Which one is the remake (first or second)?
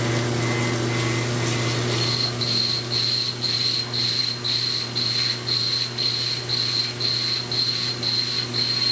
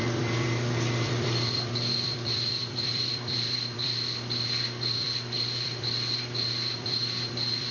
second